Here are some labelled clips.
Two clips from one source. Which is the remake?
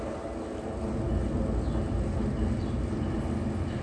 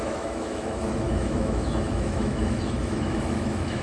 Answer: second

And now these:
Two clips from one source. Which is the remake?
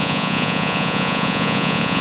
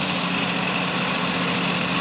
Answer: first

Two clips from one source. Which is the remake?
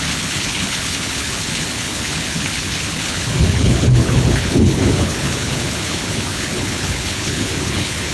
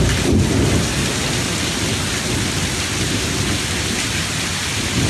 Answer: first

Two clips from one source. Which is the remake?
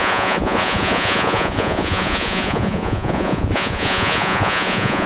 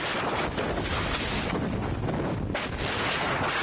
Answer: first